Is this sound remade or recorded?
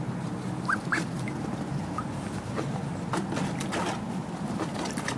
recorded